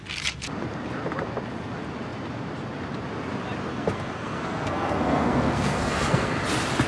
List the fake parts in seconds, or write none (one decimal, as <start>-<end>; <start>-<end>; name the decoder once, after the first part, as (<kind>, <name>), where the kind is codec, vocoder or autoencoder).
3.7-6.4 (codec, SNAC)